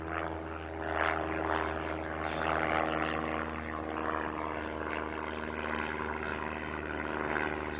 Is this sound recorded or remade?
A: recorded